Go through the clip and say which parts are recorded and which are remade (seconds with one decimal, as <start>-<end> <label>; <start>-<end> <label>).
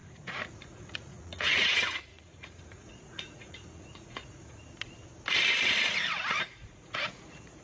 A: 0.0-4.6 remade; 4.6-5.9 recorded; 5.9-7.6 remade